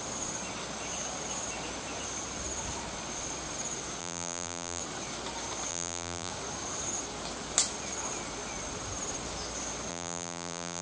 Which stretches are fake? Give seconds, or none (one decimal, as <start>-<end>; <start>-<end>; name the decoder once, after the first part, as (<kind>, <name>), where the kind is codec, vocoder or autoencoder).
4.0-4.8 (vocoder, BigVGAN v2); 5.7-6.3; 9.9-10.8